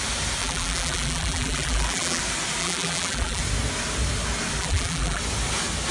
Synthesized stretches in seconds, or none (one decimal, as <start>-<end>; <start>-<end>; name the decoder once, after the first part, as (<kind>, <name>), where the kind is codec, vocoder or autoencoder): 0.4-2.2 (vocoder, BigVGAN v2); 2.6-3.4; 4.6-5.2